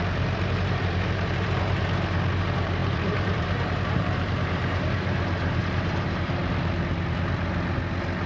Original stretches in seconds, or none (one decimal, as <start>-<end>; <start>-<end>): 6.4-8.3